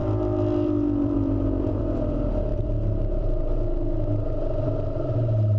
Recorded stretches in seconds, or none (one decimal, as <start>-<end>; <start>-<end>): 1.8-2.5; 3.4-5.6